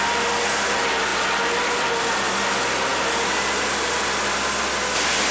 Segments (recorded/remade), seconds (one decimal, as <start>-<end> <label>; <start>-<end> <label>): 0.0-5.3 recorded